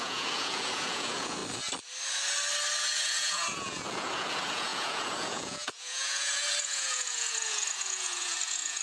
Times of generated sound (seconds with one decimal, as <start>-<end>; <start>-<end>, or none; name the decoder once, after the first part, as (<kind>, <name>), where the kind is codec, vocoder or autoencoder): 0.0-1.4 (vocoder, Vocos); 2.8-8.8